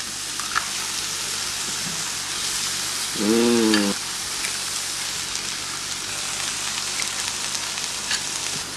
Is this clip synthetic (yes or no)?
no